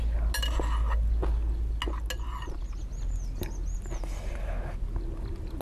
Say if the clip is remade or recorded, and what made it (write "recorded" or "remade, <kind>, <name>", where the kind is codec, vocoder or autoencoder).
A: recorded